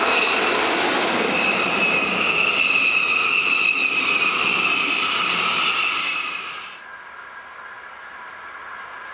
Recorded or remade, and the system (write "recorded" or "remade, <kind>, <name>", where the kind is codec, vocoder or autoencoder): recorded